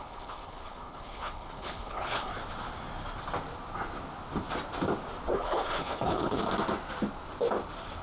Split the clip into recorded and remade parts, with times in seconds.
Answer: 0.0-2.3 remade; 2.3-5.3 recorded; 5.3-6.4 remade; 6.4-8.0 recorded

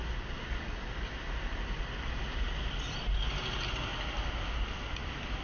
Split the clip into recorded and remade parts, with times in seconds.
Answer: 0.0-5.4 recorded

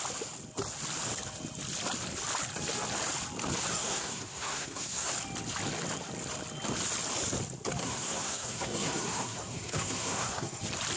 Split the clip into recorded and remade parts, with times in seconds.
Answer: 0.0-3.7 recorded; 3.7-5.1 remade; 5.1-7.8 recorded; 7.8-10.6 remade; 10.6-11.0 recorded

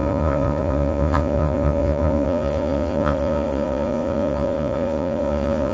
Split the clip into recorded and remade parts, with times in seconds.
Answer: 0.0-5.7 remade

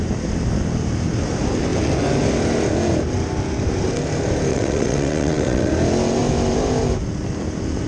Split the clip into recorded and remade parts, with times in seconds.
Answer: 0.0-4.5 recorded; 4.5-5.7 remade; 5.7-7.9 recorded

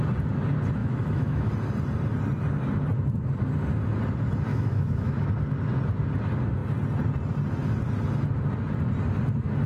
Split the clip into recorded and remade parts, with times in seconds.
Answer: 0.0-0.8 recorded; 0.8-1.5 remade; 1.5-4.5 recorded; 4.5-5.3 remade; 5.3-9.7 recorded